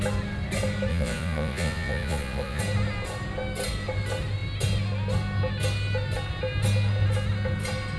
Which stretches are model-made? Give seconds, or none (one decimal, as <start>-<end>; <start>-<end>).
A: 0.9-2.6